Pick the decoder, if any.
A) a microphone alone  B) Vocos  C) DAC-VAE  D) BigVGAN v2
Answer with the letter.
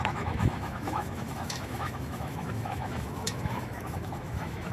C